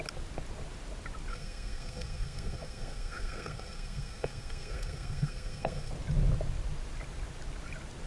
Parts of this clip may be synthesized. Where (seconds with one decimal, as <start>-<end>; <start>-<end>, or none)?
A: 1.3-5.9